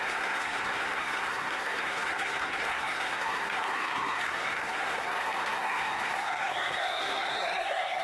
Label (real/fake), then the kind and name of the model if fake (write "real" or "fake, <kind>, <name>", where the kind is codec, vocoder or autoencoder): fake, codec, SNAC